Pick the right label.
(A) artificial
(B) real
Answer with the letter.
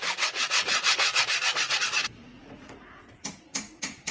A